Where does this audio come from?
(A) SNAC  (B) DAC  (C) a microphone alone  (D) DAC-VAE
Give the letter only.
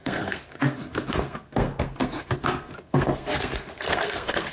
A